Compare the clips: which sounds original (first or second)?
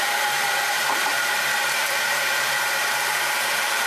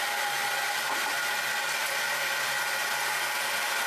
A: second